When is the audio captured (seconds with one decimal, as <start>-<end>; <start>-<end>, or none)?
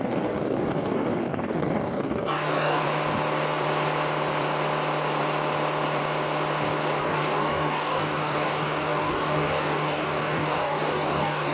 2.8-7.0